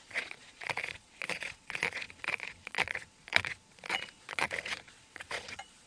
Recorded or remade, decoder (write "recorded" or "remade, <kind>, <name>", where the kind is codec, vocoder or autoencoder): remade, vocoder, Vocos